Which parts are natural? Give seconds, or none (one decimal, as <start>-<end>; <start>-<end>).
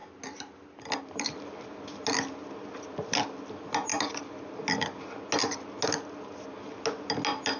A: 0.0-7.6